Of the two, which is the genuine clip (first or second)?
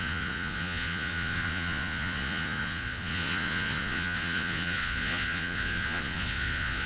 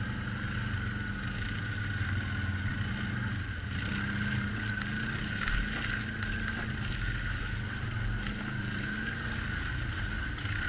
second